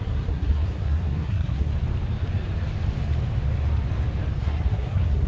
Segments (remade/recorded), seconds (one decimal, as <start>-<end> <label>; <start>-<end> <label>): 0.0-1.7 remade; 1.7-4.4 recorded; 4.4-5.3 remade